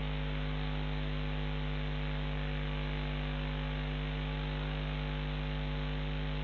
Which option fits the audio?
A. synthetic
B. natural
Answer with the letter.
B